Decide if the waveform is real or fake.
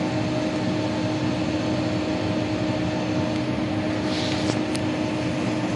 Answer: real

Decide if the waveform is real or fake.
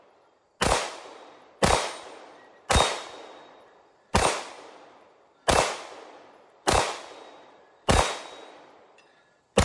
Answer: real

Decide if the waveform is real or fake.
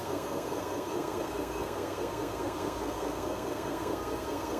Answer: fake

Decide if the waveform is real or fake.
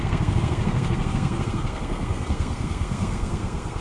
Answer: fake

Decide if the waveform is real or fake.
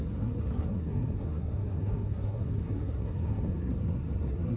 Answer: fake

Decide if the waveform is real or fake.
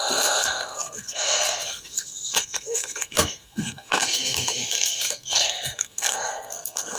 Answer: fake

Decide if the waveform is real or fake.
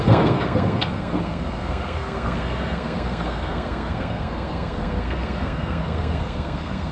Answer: fake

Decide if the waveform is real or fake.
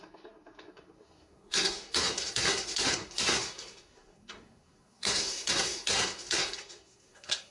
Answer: fake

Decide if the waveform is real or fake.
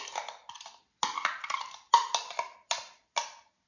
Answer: real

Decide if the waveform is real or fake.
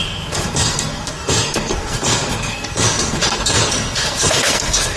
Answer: fake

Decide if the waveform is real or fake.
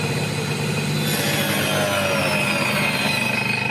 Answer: real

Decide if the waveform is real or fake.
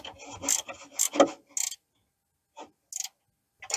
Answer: real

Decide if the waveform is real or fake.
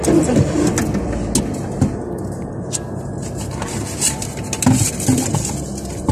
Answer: real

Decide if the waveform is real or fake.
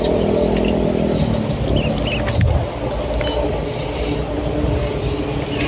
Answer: real